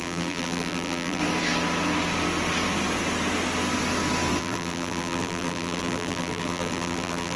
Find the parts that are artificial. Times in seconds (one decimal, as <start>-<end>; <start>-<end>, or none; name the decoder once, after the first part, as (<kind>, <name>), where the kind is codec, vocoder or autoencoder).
0.0-1.2 (vocoder, BigVGAN v2); 4.4-7.4